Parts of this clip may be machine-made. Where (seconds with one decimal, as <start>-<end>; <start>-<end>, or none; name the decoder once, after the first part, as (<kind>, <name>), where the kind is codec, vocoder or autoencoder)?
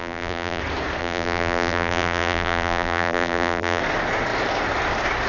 0.0-0.6 (vocoder, BigVGAN v2); 1.0-3.8